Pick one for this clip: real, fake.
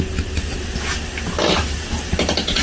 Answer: real